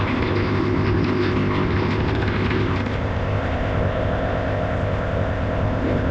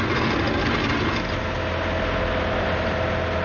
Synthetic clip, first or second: first